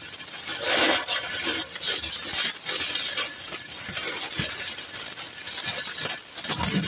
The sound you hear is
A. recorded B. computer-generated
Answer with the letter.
A